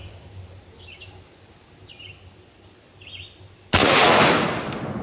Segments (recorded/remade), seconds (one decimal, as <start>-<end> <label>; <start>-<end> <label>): 0.0-3.8 recorded; 3.8-4.6 remade; 4.6-5.0 recorded